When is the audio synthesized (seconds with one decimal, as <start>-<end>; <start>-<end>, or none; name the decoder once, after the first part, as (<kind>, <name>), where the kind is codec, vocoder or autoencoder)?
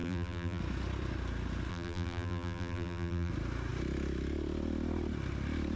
0.0-0.6 (vocoder, BigVGAN v2); 1.7-3.3